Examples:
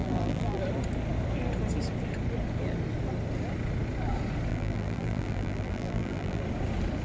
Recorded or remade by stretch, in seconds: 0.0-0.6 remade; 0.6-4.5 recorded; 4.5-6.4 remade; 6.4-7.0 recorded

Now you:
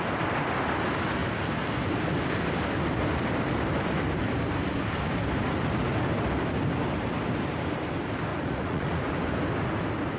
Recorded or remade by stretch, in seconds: 0.0-8.3 recorded; 8.3-9.0 remade; 9.0-10.2 recorded

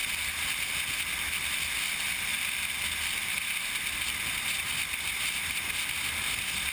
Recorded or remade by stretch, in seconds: 0.0-6.7 recorded

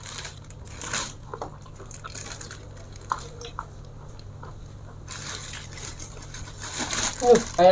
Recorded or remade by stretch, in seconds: 0.0-7.7 recorded